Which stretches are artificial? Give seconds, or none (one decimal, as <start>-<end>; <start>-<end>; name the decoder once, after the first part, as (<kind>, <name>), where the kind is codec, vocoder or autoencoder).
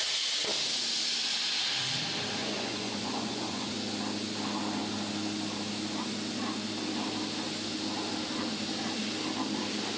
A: 2.4-3.7 (vocoder, Vocos)